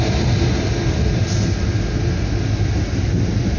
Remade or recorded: recorded